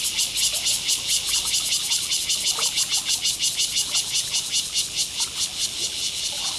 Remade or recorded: recorded